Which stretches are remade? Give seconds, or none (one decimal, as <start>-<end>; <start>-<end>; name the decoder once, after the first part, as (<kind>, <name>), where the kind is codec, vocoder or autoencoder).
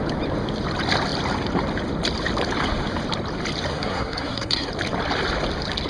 3.7-4.7 (codec, SNAC)